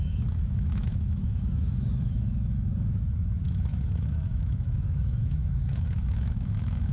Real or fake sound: fake